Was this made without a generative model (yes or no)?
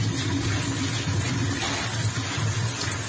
yes